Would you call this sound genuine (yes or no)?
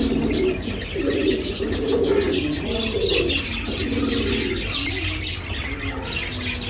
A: yes